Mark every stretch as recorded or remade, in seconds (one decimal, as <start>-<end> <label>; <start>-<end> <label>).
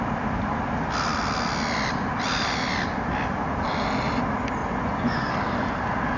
0.0-4.6 recorded; 4.6-5.3 remade; 5.3-6.2 recorded